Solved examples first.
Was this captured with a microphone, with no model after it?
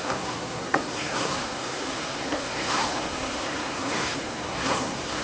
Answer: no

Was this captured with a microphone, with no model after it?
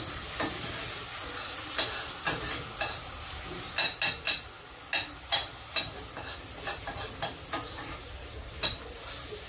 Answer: yes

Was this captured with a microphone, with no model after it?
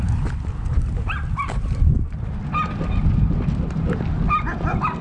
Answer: yes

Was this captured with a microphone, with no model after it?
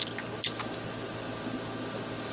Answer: yes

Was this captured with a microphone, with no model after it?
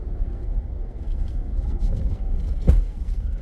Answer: no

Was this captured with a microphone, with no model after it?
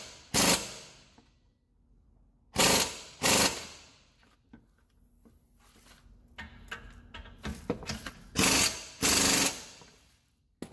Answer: yes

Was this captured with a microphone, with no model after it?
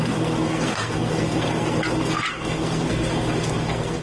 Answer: no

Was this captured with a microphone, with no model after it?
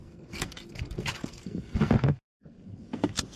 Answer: no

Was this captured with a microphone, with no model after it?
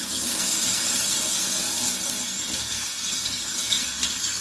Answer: no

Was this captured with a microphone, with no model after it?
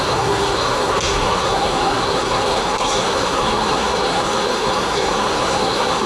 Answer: no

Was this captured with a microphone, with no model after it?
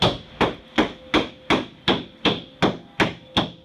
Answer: yes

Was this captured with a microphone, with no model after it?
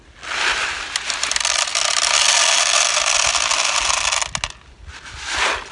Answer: yes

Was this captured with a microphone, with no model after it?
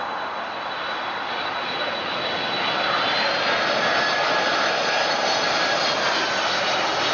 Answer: yes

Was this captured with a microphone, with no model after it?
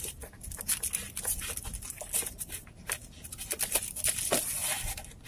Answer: yes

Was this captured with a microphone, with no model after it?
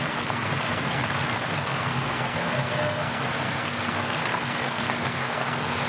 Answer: no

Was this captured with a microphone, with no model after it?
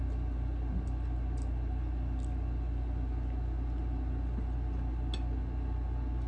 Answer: yes